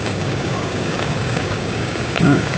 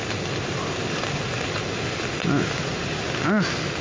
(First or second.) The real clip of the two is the second